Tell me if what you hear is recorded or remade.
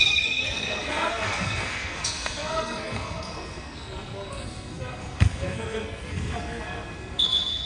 remade